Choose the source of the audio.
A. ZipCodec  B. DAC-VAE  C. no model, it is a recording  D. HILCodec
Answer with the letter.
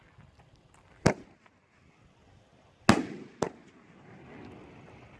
C